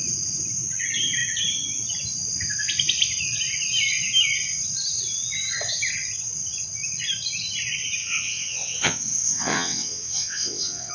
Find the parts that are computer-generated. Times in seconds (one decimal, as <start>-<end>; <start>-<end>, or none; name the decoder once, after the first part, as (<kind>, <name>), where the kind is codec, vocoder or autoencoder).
8.0-10.9 (vocoder, WaveNeXt)